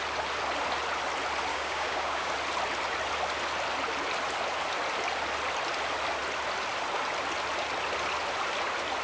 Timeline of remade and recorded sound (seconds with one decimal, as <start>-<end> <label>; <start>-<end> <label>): 0.0-1.5 recorded; 1.5-2.3 remade; 2.3-9.0 recorded

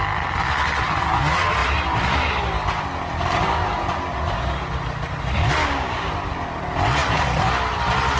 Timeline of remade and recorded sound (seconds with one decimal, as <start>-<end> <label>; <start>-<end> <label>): 0.0-5.6 recorded; 5.6-6.1 remade; 6.1-8.2 recorded

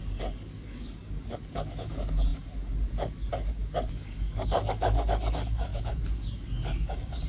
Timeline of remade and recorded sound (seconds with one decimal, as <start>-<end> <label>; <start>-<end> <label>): 0.0-7.3 remade

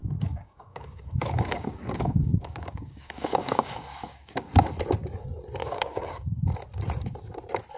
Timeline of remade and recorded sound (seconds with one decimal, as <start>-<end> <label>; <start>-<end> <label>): 0.0-4.5 remade; 4.5-5.6 recorded; 5.6-6.4 remade; 6.4-7.8 recorded